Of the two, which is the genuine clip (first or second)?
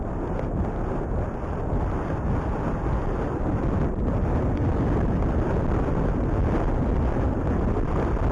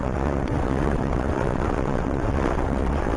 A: first